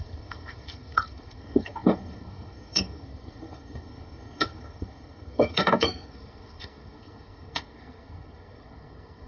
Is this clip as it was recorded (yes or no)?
no